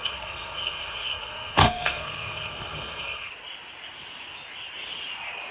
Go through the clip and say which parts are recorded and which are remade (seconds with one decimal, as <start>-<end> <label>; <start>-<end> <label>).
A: 0.0-3.3 remade; 3.3-5.5 recorded